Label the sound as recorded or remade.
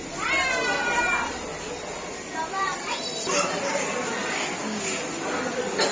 recorded